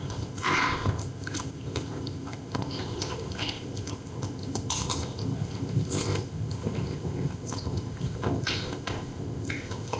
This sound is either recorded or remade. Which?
remade